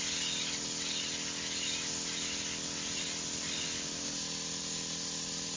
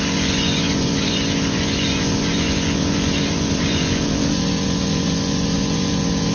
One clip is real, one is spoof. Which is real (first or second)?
first